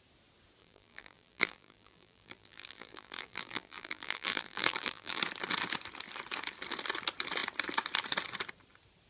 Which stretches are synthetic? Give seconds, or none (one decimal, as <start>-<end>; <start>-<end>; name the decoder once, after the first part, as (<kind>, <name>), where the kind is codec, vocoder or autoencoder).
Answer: 0.6-5.2 (vocoder, BigVGAN v2)